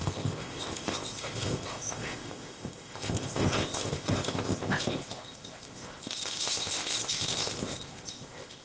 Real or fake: fake